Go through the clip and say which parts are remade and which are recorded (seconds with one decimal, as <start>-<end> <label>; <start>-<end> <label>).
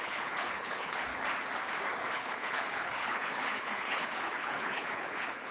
0.0-1.1 remade; 1.1-2.1 recorded; 2.1-5.5 remade